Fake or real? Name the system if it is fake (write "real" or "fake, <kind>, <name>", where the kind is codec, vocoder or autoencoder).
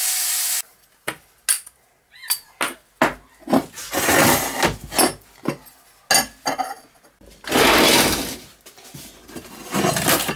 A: real